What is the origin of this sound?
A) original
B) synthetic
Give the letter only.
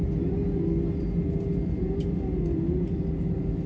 A